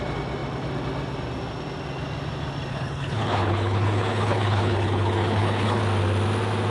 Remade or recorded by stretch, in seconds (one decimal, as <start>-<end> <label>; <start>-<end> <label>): 0.0-2.7 recorded; 2.7-5.8 remade; 5.8-6.7 recorded